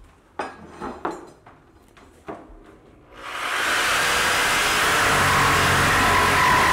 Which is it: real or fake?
real